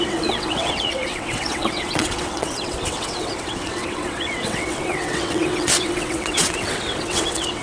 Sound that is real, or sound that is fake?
fake